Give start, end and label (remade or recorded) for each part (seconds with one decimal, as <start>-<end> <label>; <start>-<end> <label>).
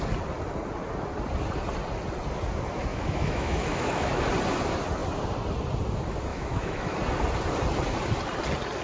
0.0-2.9 recorded; 2.9-4.3 remade; 4.3-6.3 recorded; 6.3-7.0 remade; 7.0-8.8 recorded